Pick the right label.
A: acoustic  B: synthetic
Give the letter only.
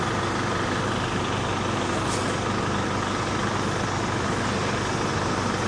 A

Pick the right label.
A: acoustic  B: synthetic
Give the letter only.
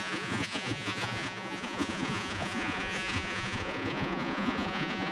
B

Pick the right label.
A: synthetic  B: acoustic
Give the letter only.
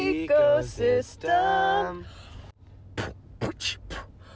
B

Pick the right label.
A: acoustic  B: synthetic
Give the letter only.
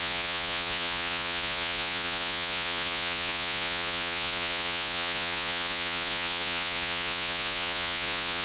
B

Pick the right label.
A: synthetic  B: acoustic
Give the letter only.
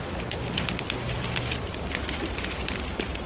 B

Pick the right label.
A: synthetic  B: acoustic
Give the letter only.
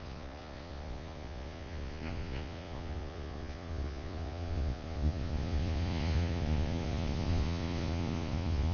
A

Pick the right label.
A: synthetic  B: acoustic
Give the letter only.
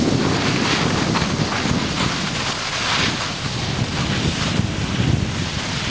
B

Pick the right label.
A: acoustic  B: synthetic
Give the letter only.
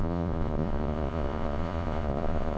B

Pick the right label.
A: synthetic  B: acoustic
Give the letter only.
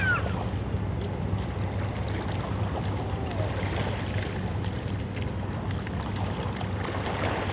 B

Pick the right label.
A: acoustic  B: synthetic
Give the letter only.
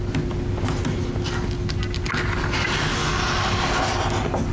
A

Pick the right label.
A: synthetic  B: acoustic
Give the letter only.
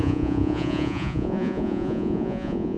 A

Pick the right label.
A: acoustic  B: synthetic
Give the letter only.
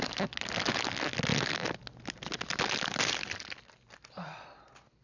A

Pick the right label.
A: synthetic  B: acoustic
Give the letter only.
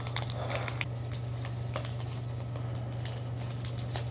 B